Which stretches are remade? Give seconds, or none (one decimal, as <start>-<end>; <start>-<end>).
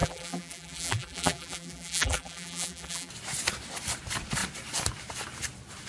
0.0-3.1